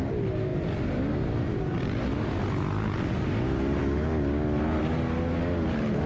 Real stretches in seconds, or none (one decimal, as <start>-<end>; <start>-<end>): 0.0-6.1